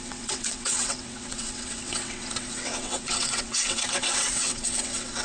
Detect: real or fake fake